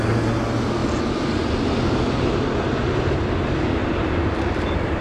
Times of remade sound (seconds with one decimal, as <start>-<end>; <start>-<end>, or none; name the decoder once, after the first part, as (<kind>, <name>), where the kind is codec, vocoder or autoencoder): 3.8-5.0 (vocoder, BigVGAN v2)